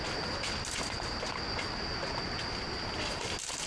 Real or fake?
real